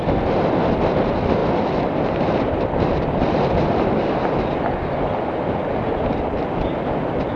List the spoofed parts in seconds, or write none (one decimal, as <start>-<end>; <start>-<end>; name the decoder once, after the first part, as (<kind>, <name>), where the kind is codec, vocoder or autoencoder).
none